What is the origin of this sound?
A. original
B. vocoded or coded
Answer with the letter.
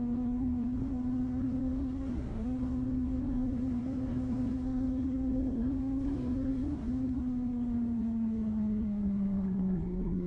B